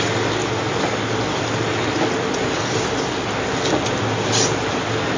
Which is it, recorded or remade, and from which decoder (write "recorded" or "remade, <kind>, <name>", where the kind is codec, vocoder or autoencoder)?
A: recorded